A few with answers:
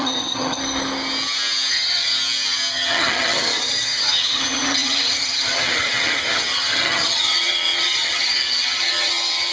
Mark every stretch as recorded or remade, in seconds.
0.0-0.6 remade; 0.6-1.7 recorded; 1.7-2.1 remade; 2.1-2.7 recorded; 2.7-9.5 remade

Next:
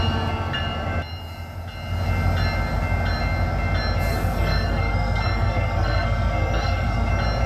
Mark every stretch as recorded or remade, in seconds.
0.0-4.1 recorded; 4.1-7.1 remade; 7.1-7.5 recorded

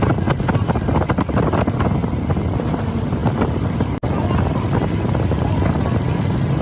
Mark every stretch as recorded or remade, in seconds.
0.0-6.6 recorded

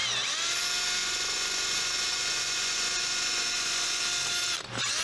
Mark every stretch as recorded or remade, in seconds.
0.0-1.0 recorded; 1.0-4.0 remade; 4.0-5.0 recorded

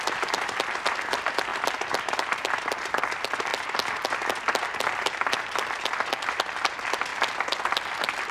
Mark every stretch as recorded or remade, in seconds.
0.0-8.3 recorded

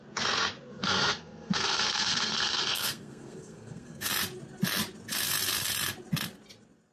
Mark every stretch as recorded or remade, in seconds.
0.0-0.7 recorded; 0.7-4.1 remade; 4.1-6.9 recorded

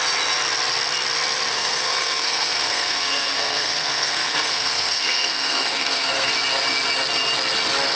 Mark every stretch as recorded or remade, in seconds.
0.0-1.5 recorded; 1.5-6.3 remade; 6.3-8.0 recorded

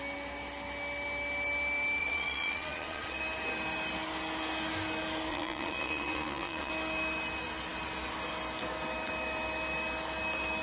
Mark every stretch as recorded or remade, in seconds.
0.0-2.0 recorded; 2.0-3.2 remade; 3.2-5.3 recorded; 5.3-6.7 remade; 6.7-10.6 recorded